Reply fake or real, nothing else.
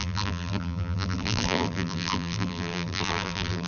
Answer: fake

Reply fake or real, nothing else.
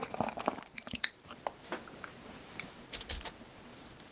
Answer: fake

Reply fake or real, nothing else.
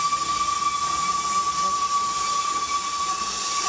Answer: real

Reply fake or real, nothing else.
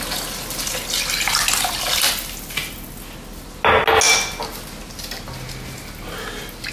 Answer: real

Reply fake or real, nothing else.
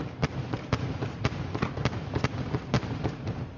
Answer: fake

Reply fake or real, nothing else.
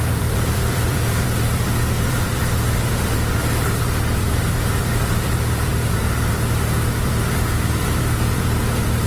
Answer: fake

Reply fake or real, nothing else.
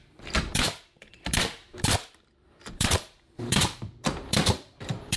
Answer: fake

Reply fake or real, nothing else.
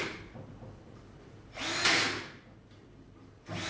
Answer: real